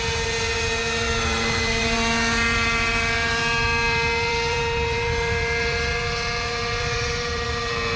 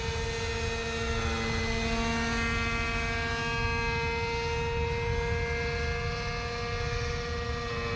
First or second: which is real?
second